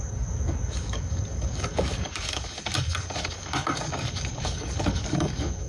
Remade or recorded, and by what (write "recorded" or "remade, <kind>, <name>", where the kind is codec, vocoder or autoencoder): remade, codec, DAC